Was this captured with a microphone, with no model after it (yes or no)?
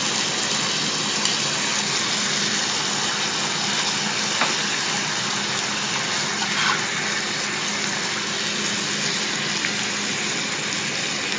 yes